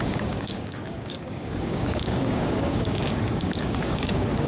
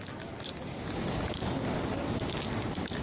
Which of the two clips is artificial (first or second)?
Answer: first